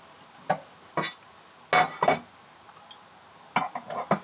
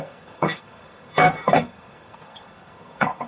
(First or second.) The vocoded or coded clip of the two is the second